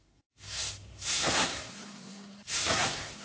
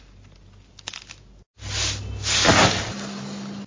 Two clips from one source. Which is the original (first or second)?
second